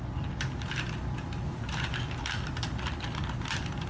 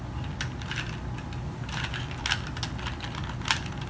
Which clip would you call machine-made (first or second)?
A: first